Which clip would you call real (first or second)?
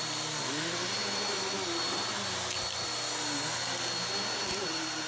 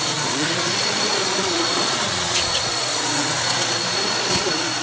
first